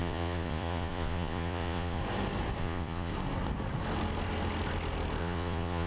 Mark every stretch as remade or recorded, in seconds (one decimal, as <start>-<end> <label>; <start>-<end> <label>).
0.0-2.0 remade; 2.0-2.6 recorded; 2.6-3.1 remade; 3.1-5.2 recorded; 5.2-5.9 remade